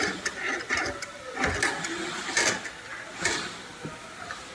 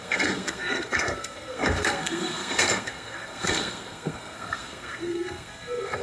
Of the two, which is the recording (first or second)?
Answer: first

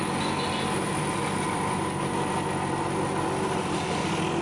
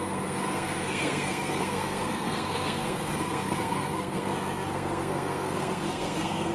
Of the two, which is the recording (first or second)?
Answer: first